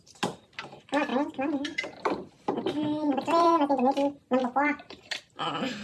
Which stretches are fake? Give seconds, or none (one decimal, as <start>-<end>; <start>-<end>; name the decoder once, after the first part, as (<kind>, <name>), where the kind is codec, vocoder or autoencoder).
1.1-3.7 (vocoder, BigVGAN v2); 4.4-5.2